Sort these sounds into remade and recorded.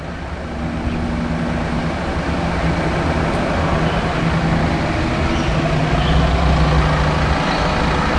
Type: recorded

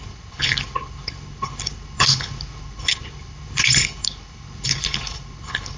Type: remade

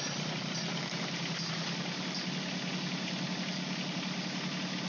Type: recorded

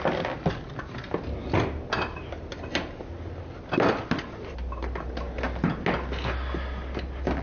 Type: recorded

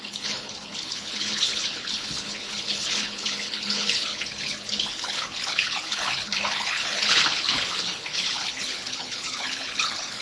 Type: remade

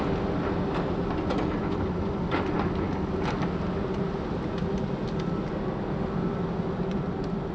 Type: recorded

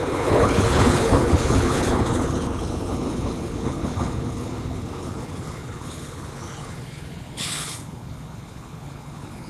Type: remade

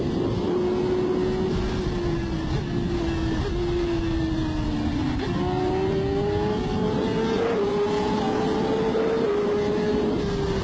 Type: recorded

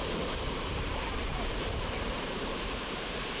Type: recorded